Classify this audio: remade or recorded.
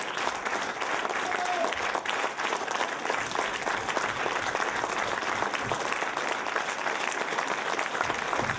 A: recorded